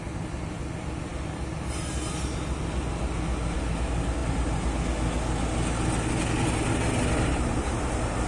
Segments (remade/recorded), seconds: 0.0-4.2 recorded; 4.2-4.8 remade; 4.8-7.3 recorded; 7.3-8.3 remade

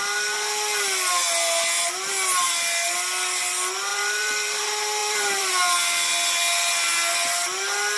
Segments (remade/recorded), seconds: 0.0-3.9 recorded; 3.9-4.6 remade; 4.6-5.0 recorded; 5.0-5.5 remade; 5.5-8.0 recorded

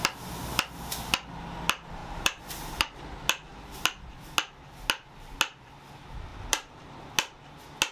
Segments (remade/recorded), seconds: 0.0-2.0 recorded; 2.0-3.0 remade; 3.0-6.3 recorded; 6.3-7.0 remade; 7.0-7.9 recorded

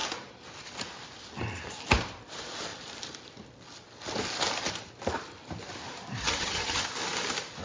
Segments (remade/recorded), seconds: 0.0-6.2 recorded; 6.2-6.8 remade; 6.8-7.6 recorded

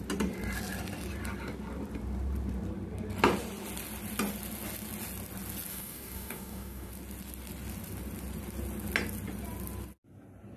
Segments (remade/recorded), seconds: 0.0-5.7 recorded; 5.7-6.9 remade; 6.9-10.6 recorded

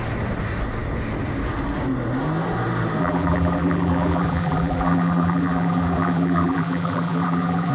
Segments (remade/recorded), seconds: 0.0-3.0 recorded; 3.0-7.7 remade